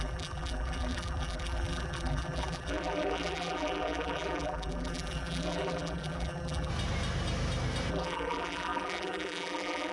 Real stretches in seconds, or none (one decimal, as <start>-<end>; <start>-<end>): 6.7-7.9

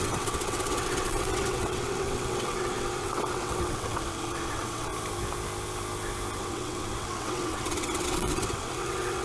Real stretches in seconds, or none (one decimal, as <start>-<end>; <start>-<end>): 4.9-6.4

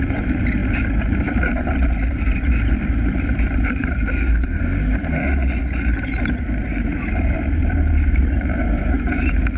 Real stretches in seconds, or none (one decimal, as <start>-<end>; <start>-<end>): none

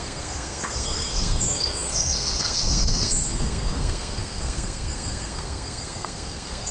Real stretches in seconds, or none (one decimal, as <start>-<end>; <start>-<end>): none

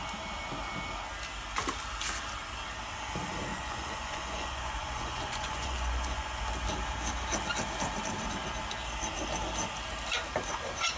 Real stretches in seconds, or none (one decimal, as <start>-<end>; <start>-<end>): 0.0-3.5; 6.4-11.0

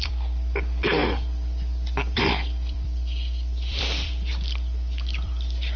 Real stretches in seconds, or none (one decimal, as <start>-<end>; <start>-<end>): none